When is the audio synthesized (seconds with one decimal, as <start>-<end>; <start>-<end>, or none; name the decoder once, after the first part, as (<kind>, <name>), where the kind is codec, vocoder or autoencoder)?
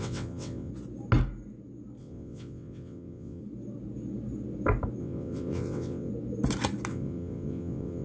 0.0-0.7 (vocoder, WaveNeXt); 2.0-3.4; 5.0-6.1; 6.9-8.0